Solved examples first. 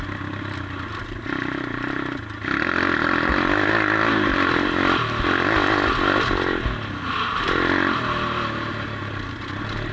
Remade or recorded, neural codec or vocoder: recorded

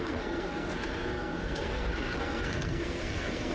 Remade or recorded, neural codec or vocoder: remade, codec, SNAC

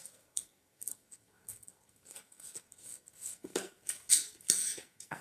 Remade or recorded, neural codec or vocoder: remade, codec, SNAC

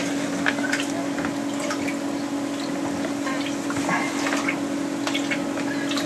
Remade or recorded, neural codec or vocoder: recorded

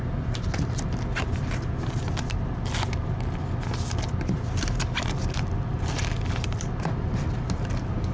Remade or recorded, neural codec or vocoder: recorded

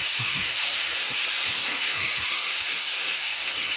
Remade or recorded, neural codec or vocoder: remade, codec, SNAC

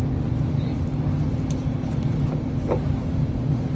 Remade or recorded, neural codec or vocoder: recorded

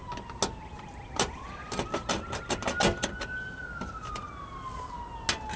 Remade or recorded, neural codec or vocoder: recorded